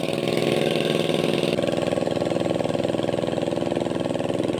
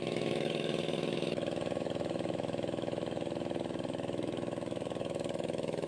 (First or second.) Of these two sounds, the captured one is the first